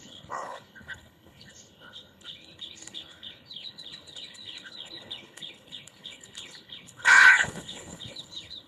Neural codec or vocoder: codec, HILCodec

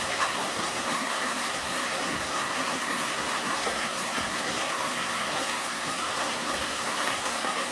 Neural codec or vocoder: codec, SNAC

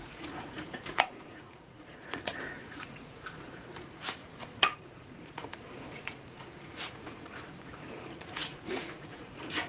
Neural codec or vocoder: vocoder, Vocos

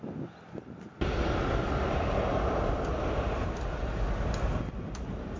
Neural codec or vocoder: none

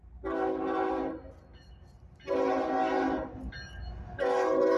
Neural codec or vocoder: none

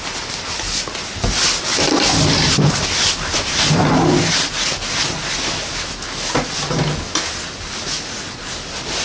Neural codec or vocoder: none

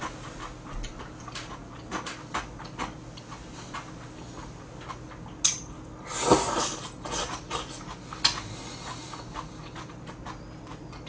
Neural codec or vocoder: none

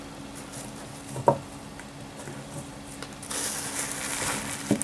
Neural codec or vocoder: none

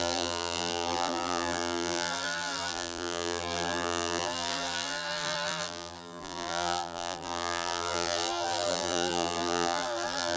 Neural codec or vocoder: vocoder, BigVGAN v2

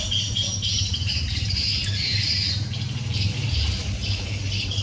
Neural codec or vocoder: vocoder, BigVGAN v2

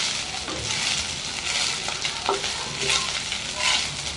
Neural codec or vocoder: none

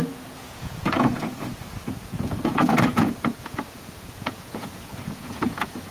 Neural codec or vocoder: vocoder, Vocos